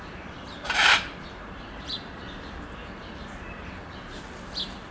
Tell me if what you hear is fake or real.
fake